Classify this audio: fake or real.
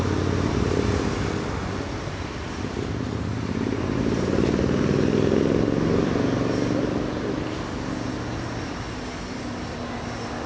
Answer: real